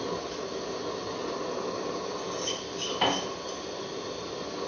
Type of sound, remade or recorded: recorded